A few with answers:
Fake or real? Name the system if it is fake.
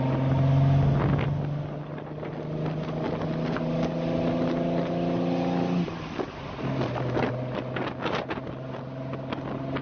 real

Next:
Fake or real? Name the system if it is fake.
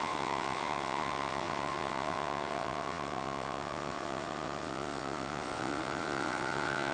fake, vocoder, WaveNeXt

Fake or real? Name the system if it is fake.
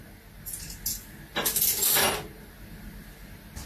real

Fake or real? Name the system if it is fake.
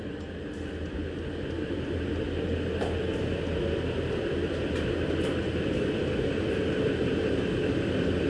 real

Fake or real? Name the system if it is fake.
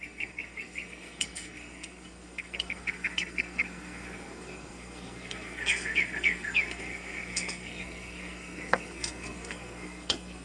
fake, codec, SNAC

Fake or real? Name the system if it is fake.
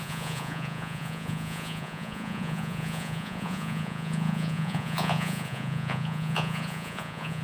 fake, vocoder, Vocos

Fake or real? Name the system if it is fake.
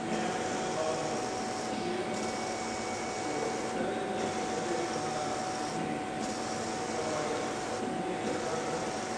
real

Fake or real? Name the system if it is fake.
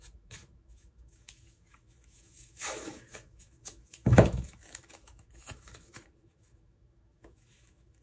fake, autoencoder, DAC-VAE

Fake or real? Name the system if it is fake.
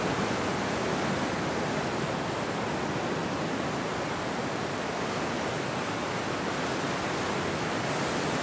real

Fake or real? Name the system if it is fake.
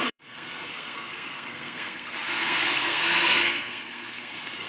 fake, codec, SNAC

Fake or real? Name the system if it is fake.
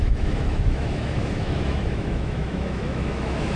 fake, autoencoder, DAC-VAE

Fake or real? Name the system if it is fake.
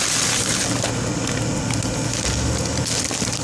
real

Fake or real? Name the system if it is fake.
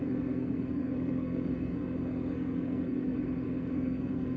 fake, codec, SNAC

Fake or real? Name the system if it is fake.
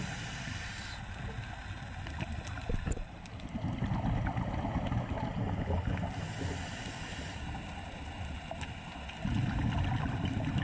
real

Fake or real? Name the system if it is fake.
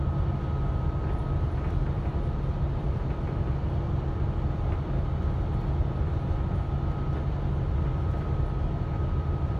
real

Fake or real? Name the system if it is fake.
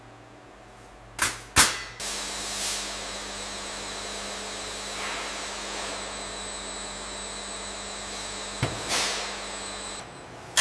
real